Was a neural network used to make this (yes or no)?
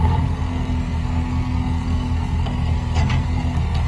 yes